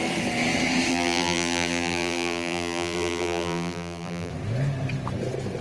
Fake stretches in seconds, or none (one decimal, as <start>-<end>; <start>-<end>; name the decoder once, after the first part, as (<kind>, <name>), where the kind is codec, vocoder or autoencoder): 0.9-4.3 (vocoder, BigVGAN v2)